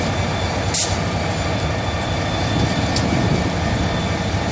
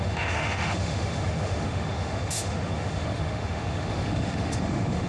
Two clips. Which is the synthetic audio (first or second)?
second